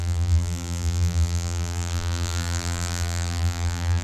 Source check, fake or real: fake